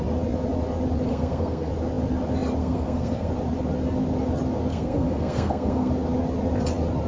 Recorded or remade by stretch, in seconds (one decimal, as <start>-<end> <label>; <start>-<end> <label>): 0.0-1.1 recorded; 1.1-1.7 remade; 1.7-2.6 recorded; 2.6-3.3 remade; 3.3-4.7 recorded; 4.7-5.9 remade; 5.9-7.1 recorded